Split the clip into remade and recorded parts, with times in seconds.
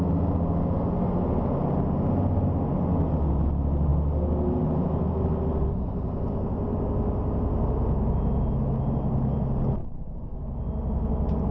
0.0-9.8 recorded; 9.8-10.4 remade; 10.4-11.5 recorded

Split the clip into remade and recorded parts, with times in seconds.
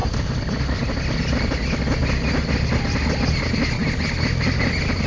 0.0-5.1 recorded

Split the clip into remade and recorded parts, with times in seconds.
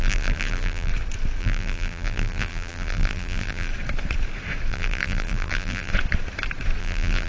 0.0-0.9 remade; 0.9-1.4 recorded; 1.4-3.7 remade; 3.7-4.7 recorded; 4.7-5.9 remade; 5.9-6.8 recorded; 6.8-7.3 remade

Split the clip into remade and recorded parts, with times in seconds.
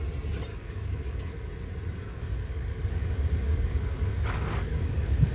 0.0-0.5 recorded; 0.5-1.5 remade; 1.5-2.1 recorded; 2.1-5.3 remade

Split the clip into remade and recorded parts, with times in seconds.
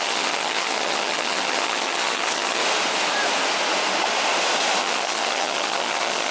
0.0-2.6 remade; 2.6-4.8 recorded; 4.8-6.3 remade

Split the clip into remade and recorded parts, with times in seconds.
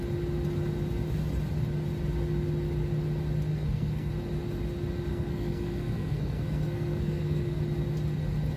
0.0-3.5 recorded; 3.5-4.1 remade; 4.1-5.1 recorded; 5.1-7.6 remade; 7.6-8.6 recorded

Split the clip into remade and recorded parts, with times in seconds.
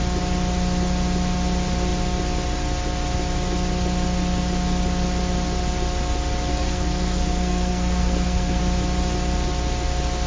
0.0-6.5 recorded; 6.5-8.6 remade; 8.6-10.3 recorded